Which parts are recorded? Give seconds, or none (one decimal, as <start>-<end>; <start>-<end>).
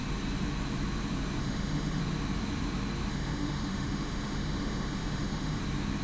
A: 0.0-1.4; 2.0-3.1; 5.6-6.0